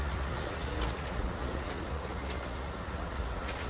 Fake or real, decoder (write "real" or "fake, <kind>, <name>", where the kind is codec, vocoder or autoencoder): fake, vocoder, Vocos